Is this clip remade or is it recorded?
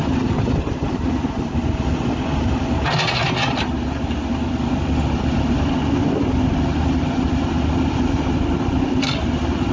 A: recorded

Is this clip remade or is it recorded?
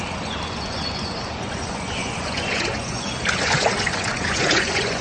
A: remade